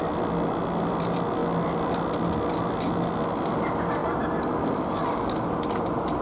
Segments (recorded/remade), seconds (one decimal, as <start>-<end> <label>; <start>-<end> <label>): 0.0-6.2 recorded